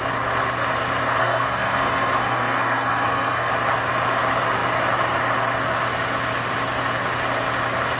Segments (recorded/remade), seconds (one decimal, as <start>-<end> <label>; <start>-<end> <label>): 0.0-1.2 recorded; 1.2-3.5 remade; 3.5-8.0 recorded